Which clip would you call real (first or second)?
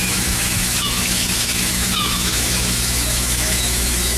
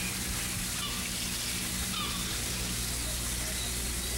second